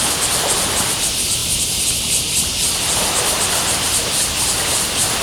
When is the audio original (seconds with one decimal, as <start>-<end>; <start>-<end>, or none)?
0.0-1.4; 2.2-5.2